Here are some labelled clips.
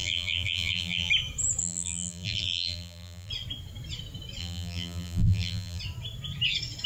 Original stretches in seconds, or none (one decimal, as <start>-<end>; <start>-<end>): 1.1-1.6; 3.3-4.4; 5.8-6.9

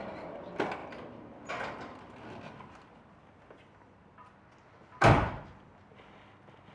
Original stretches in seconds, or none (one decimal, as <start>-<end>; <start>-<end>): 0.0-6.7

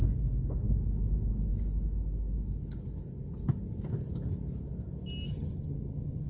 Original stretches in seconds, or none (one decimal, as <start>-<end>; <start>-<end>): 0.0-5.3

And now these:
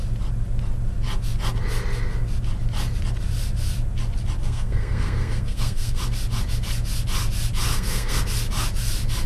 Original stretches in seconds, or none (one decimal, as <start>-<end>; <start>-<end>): 0.0-4.4; 6.0-7.7; 8.2-9.3

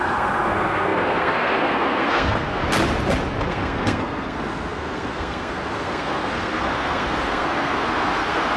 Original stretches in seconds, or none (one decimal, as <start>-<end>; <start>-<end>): 2.6-3.5